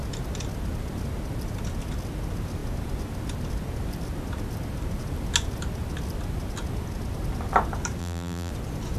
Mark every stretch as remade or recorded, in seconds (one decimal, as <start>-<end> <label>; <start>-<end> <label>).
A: 0.0-8.0 recorded; 8.0-8.5 remade; 8.5-9.0 recorded